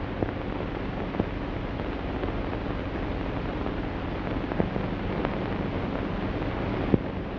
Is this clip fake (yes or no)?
no